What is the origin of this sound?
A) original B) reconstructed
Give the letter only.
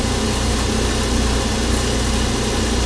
A